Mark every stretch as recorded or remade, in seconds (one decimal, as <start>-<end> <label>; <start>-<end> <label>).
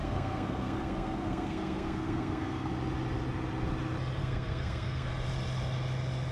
0.0-2.7 remade; 2.7-4.2 recorded; 4.2-5.1 remade; 5.1-6.3 recorded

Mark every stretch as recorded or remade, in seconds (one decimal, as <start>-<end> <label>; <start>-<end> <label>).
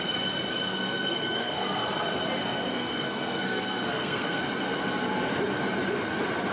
0.0-0.7 recorded; 0.7-1.8 remade; 1.8-2.5 recorded; 2.5-4.4 remade; 4.4-6.5 recorded